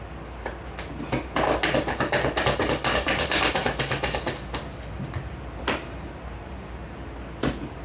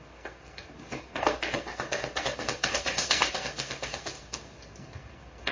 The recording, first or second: first